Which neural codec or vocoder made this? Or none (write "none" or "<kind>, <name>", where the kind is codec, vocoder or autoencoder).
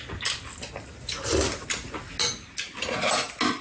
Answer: none